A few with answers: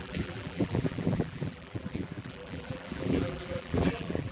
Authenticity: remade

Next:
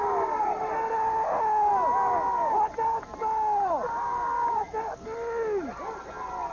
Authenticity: recorded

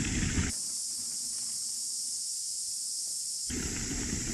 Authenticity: recorded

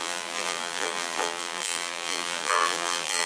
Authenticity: remade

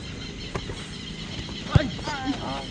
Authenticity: recorded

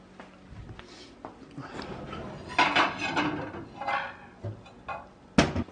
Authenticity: recorded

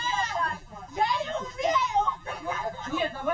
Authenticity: remade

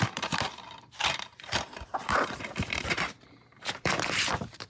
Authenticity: remade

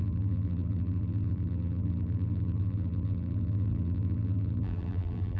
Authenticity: remade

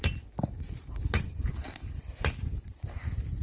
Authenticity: recorded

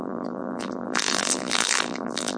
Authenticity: remade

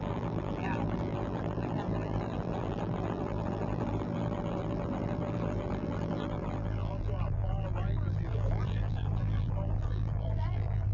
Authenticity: remade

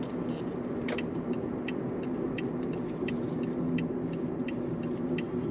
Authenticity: recorded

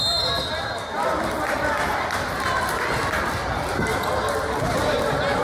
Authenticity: recorded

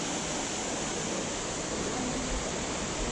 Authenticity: remade